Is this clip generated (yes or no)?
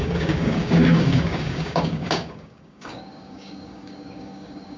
yes